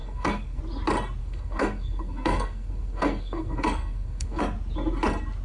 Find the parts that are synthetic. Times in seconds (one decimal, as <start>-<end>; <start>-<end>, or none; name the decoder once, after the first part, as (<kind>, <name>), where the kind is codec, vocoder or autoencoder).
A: 0.0-0.6 (codec, SNAC); 1.2-4.4